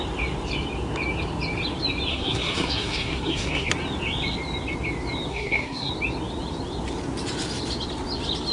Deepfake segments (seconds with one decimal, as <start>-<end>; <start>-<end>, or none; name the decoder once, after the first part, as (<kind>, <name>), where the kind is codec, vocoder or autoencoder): 2.1-3.7 (codec, SNAC); 5.3-5.9